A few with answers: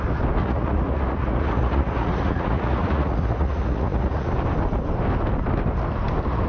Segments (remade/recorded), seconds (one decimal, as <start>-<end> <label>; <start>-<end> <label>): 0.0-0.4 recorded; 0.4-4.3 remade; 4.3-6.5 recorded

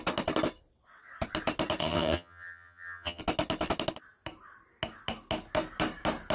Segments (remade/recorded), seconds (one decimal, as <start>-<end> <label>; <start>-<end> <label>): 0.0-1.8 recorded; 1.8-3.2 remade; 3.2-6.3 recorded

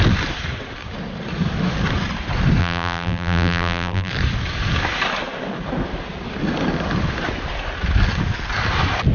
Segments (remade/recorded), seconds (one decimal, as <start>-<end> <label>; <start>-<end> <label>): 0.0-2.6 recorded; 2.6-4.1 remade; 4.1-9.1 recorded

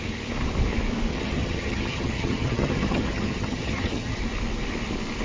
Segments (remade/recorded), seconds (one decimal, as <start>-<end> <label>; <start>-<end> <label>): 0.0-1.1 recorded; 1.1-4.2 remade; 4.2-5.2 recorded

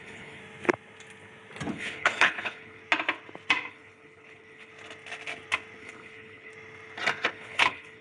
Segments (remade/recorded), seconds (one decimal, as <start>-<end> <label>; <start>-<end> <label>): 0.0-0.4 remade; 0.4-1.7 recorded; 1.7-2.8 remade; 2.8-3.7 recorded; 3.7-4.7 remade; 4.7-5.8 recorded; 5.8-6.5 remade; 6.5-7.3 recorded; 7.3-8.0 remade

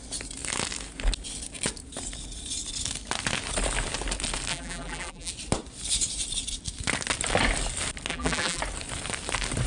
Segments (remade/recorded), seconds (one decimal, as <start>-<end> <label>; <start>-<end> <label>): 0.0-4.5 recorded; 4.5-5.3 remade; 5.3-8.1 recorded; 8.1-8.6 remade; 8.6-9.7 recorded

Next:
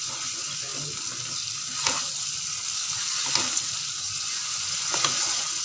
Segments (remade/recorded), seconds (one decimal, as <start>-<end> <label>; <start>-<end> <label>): 0.0-0.7 remade; 0.7-4.1 recorded; 4.1-5.6 remade